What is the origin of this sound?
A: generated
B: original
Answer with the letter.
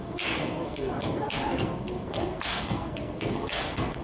A